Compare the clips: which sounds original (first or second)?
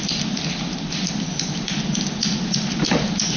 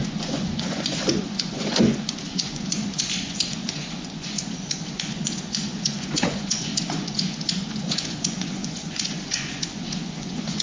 first